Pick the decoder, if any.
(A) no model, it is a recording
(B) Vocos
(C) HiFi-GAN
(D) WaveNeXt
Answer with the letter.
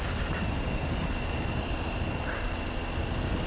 A